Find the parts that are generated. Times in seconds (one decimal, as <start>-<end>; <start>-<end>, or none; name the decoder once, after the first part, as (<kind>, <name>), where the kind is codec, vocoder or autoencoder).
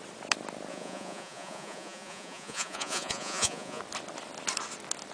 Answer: 0.7-3.8 (vocoder, Vocos)